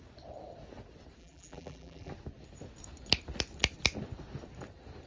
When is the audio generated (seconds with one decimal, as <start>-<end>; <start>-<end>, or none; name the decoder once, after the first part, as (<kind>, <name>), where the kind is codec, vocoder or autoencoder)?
1.2-2.1 (vocoder, BigVGAN v2)